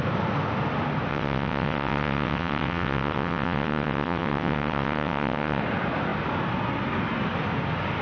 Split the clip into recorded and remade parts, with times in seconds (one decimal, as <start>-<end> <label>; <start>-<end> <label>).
0.0-1.1 recorded; 1.1-5.6 remade; 5.6-8.0 recorded